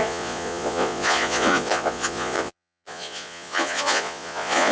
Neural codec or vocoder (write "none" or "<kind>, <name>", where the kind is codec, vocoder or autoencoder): vocoder, Vocos